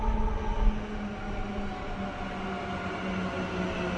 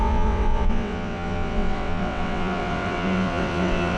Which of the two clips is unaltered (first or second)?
first